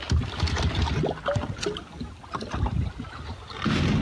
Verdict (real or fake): real